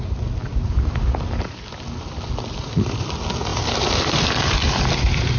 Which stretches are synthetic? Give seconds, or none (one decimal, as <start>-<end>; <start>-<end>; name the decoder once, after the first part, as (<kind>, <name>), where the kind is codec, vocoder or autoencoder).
3.5-5.4 (vocoder, BigVGAN v2)